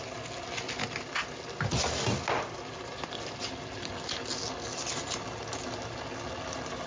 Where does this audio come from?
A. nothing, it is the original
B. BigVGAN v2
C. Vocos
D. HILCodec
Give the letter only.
A